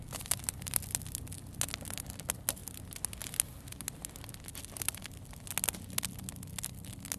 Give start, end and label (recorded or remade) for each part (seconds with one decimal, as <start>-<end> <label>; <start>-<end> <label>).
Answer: 0.0-7.2 recorded